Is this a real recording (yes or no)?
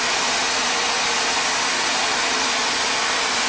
yes